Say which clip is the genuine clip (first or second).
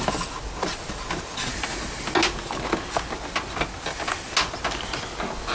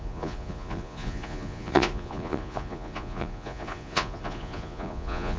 first